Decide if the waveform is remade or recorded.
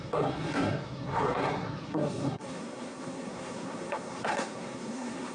remade